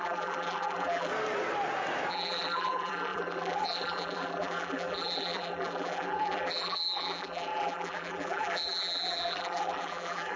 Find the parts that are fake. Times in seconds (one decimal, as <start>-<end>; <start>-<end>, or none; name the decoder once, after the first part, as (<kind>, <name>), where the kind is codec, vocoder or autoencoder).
0.0-1.1 (vocoder, BigVGAN v2); 2.1-10.4